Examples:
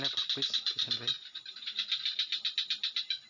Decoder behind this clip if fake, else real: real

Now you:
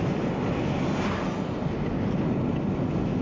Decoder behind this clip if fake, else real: real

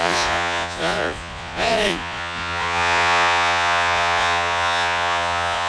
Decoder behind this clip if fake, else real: fake, vocoder, Vocos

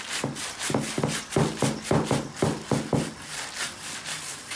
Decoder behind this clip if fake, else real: real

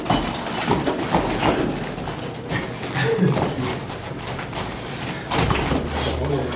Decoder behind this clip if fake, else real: real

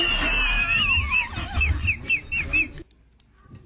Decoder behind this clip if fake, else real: real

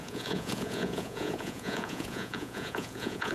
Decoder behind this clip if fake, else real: fake, vocoder, Vocos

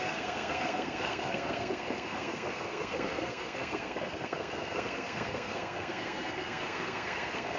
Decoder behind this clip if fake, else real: fake, codec, SNAC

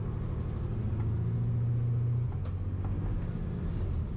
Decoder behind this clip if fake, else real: real